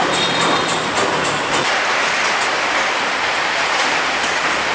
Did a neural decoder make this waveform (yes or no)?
no